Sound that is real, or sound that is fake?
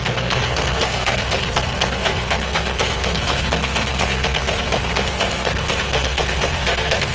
fake